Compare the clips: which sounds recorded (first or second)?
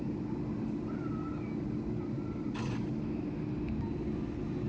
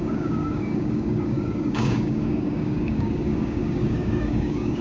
first